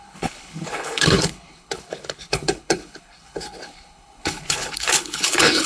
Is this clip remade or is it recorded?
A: remade